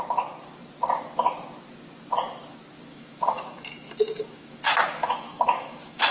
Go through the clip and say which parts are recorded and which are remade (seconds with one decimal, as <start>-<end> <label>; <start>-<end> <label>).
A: 0.0-2.9 recorded; 2.9-4.6 remade; 4.6-5.0 recorded; 5.0-6.1 remade